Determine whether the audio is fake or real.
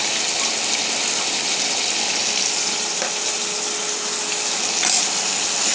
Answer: real